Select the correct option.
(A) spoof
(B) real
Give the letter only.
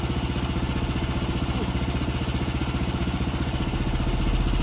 B